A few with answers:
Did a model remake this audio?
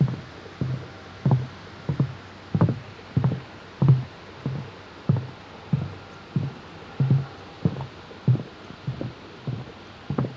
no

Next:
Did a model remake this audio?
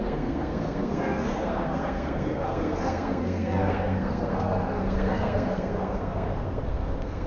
yes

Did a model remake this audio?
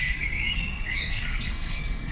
yes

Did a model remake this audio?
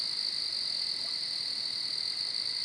no